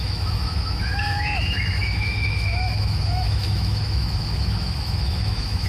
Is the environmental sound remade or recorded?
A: remade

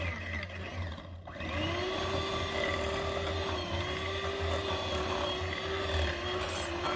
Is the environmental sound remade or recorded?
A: recorded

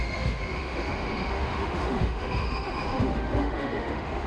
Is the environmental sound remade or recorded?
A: remade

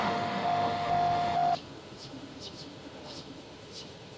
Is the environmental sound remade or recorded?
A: remade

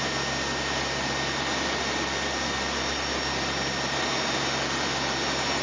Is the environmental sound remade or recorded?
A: recorded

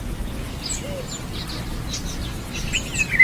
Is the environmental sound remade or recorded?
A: recorded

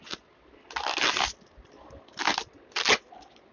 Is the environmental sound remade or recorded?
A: recorded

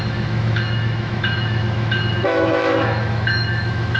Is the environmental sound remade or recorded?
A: remade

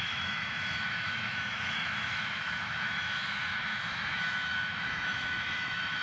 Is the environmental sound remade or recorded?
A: remade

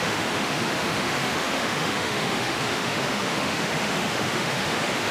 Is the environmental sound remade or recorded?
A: remade